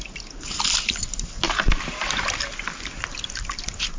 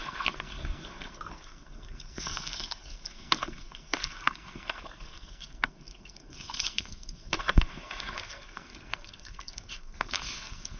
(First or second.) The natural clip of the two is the first